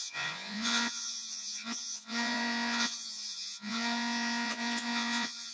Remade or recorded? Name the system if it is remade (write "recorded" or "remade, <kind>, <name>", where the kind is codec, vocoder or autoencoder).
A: remade, vocoder, Vocos